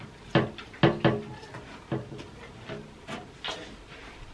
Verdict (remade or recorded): recorded